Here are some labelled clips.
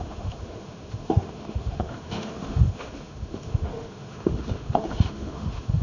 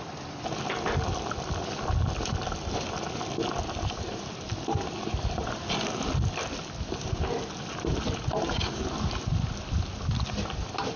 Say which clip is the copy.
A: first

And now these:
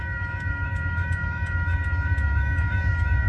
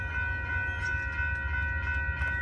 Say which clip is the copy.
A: first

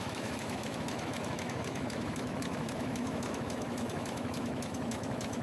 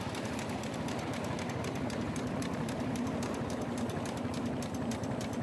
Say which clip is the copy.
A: first